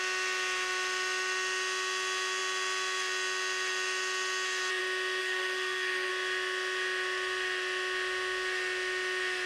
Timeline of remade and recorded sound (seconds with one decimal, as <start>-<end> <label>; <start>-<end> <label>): 0.0-5.2 recorded; 5.2-6.1 remade; 6.1-9.5 recorded